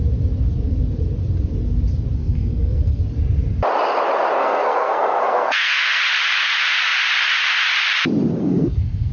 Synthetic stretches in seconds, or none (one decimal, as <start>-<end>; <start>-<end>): 2.2-3.0; 4.4-6.0; 8.4-9.1